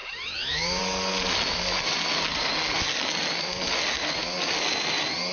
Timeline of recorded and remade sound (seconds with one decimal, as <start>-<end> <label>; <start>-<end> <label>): 0.0-0.8 remade; 0.8-5.3 recorded